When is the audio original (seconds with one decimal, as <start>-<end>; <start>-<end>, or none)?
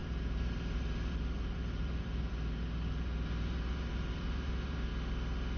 4.9-5.6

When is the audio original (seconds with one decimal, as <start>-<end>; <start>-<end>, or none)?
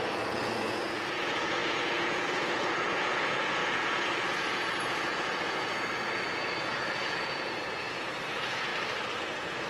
8.7-9.2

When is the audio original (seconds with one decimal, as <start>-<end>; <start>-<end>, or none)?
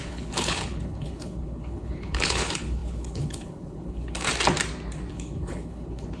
4.3-5.1